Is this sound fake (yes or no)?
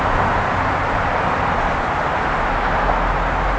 no